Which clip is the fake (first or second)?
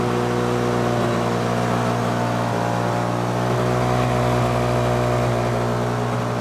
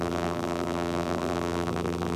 second